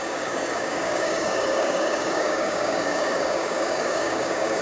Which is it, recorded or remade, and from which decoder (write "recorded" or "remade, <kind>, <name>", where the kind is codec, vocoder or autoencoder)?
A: remade, codec, DAC